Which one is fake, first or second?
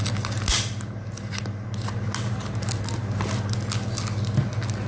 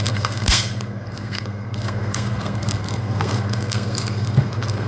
second